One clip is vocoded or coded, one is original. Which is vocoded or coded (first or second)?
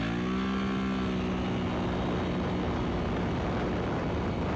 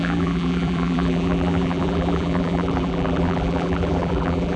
second